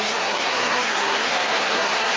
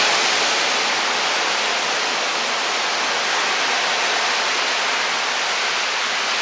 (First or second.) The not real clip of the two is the first